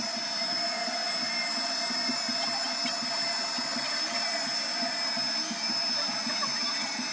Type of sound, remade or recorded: recorded